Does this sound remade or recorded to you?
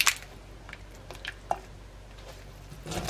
recorded